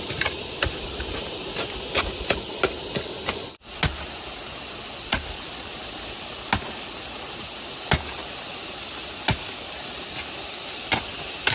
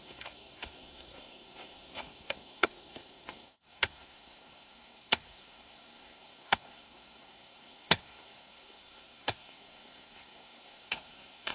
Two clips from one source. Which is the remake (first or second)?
second